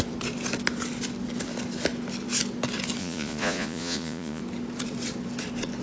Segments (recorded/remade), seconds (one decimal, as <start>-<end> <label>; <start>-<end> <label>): 0.0-3.0 recorded; 3.0-4.4 remade; 4.4-5.8 recorded

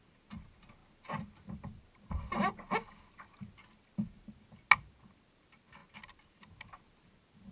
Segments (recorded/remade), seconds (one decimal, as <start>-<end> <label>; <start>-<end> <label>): 0.0-7.5 recorded

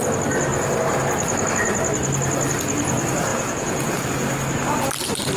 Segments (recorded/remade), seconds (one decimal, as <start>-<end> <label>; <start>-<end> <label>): 0.0-3.3 recorded; 3.3-3.9 remade; 3.9-5.4 recorded

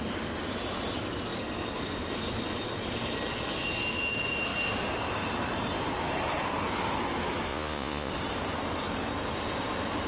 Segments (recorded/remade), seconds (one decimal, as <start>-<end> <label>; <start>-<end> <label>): 0.0-7.5 recorded; 7.5-8.1 remade; 8.1-10.1 recorded

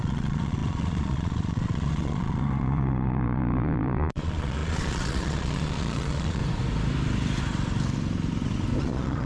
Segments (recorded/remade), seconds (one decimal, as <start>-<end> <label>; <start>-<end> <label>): 0.0-6.4 remade; 6.4-8.8 recorded; 8.8-9.3 remade

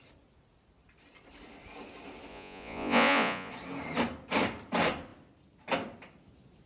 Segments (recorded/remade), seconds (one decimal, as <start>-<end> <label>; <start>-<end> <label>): 0.0-2.3 recorded; 2.3-3.5 remade; 3.5-6.7 recorded

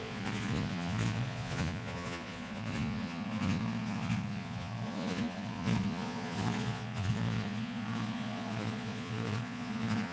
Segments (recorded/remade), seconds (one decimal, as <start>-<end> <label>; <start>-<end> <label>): 0.0-10.1 remade